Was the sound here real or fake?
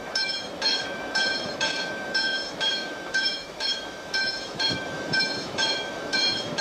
fake